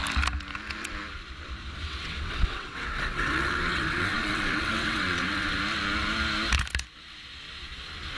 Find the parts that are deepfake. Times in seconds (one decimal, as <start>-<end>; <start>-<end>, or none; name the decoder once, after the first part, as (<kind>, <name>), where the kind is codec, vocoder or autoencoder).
1.6-5.6 (vocoder, WaveNeXt)